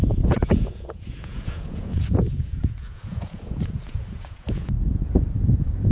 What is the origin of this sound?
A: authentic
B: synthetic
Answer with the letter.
B